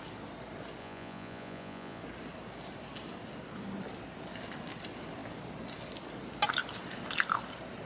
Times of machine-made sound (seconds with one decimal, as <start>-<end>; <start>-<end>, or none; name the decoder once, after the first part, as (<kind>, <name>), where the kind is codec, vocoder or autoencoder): 0.8-2.0 (vocoder, Vocos)